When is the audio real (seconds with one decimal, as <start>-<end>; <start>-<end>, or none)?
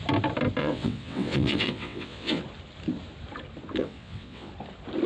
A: 0.0-0.6; 2.4-3.8; 4.5-5.1